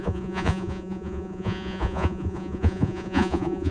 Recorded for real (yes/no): no